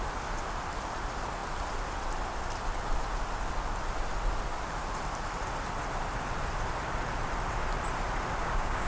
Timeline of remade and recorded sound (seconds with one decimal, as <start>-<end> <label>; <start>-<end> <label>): 0.0-8.4 recorded; 8.4-8.9 remade